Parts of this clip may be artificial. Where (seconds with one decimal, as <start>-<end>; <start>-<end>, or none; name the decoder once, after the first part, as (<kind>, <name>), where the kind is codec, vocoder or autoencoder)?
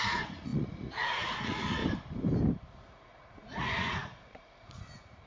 0.0-1.8 (vocoder, Vocos); 2.9-5.3